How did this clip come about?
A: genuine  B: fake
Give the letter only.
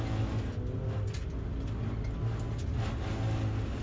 A